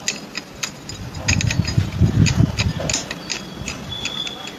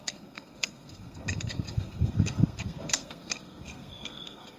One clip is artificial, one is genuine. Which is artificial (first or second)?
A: second